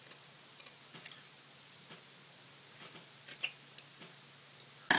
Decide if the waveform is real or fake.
real